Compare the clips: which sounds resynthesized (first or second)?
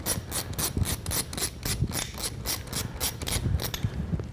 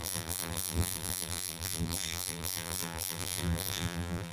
second